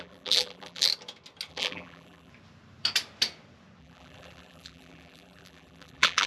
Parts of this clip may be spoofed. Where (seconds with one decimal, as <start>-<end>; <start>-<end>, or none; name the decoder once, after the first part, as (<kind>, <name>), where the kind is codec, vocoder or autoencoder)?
0.0-0.9 (vocoder, BigVGAN v2); 1.5-2.3; 3.8-6.3